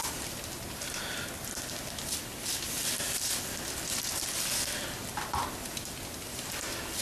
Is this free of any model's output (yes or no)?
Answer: yes